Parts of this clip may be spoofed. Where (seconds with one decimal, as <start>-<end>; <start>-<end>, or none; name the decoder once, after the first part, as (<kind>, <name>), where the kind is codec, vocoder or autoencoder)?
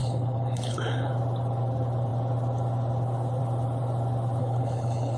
0.0-1.1 (codec, HILCodec); 4.4-5.2